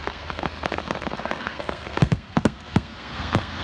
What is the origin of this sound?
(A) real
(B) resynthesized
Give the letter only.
B